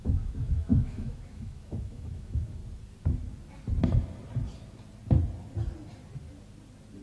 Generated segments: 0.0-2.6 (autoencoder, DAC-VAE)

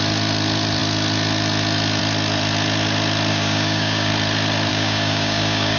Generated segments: 3.3-4.1 (codec, DAC); 4.7-5.8